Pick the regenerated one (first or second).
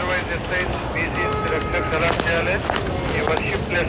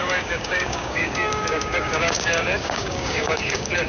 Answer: second